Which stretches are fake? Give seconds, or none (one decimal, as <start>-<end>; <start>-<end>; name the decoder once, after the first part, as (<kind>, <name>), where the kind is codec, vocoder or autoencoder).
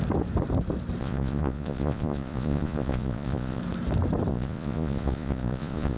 1.0-3.6 (vocoder, Vocos); 4.3-6.0